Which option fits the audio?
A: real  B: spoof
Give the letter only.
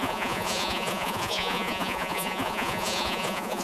B